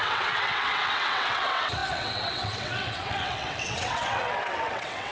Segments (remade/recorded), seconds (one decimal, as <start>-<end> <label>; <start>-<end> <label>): 0.0-5.1 remade

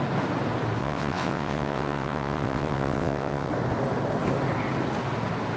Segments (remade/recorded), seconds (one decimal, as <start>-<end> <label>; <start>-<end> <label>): 0.0-0.8 recorded; 0.8-3.5 remade; 3.5-5.6 recorded

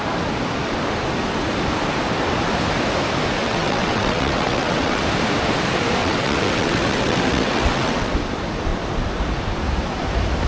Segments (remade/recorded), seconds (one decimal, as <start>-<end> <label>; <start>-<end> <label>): 0.0-3.4 recorded; 3.4-5.0 remade; 5.0-6.0 recorded; 6.0-8.1 remade; 8.1-10.5 recorded